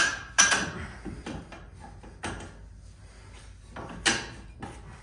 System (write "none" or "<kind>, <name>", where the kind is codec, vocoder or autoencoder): none